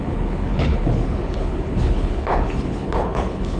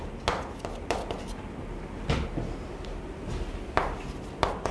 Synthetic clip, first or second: first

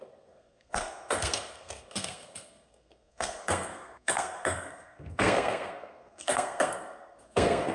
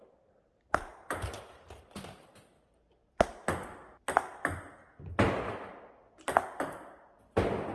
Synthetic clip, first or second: first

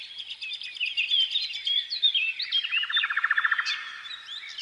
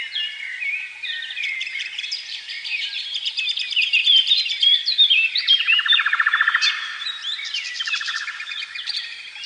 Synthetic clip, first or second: second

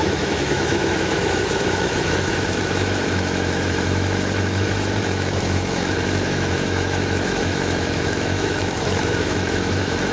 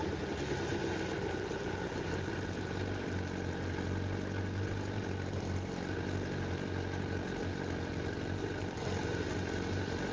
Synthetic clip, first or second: first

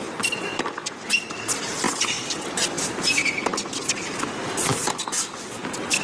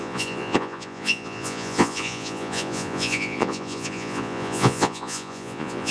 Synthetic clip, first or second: second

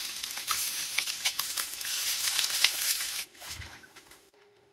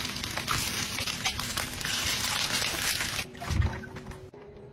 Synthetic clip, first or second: first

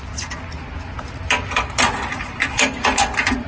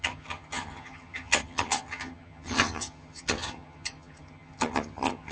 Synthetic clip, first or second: second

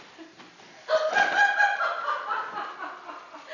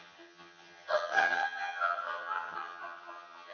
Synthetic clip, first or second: second